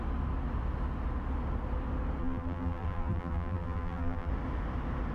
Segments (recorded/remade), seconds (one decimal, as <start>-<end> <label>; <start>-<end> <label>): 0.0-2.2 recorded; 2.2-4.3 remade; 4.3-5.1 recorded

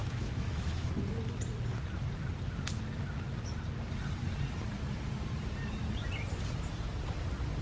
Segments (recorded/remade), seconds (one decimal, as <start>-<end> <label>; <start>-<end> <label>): 0.0-0.9 remade; 0.9-7.6 recorded

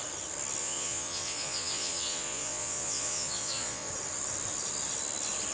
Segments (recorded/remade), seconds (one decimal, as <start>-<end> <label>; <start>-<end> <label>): 0.0-0.6 recorded; 0.6-3.9 remade; 3.9-5.5 recorded